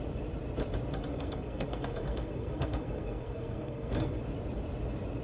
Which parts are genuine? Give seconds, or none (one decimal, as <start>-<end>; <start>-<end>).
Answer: 0.0-1.1; 4.2-5.2